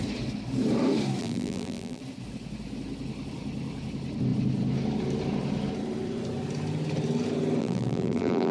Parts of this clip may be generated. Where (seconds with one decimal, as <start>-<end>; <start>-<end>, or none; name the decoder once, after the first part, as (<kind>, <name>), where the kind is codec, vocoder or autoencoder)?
1.2-2.0 (vocoder, BigVGAN v2); 7.6-8.5